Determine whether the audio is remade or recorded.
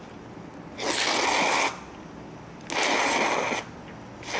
recorded